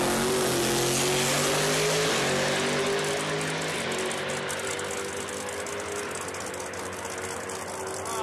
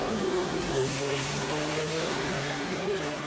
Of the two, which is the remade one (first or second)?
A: second